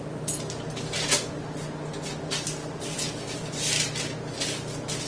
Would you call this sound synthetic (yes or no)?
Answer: no